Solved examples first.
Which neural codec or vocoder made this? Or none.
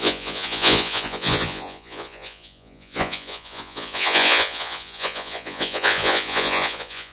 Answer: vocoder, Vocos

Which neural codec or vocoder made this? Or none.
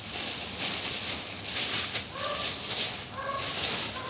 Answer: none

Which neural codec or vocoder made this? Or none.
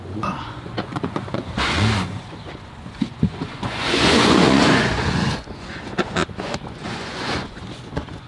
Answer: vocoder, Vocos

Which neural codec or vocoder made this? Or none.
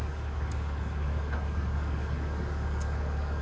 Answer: codec, DAC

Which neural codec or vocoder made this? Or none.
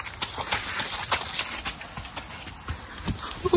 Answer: none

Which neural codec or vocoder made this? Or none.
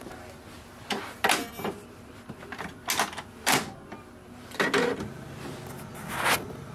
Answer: none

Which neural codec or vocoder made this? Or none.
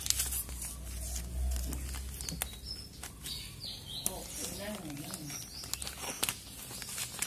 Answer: none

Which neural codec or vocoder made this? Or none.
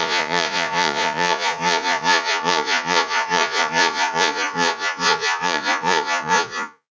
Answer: vocoder, Vocos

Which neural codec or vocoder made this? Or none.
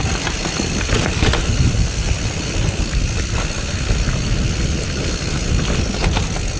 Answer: none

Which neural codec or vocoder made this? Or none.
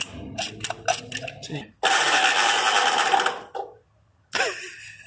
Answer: none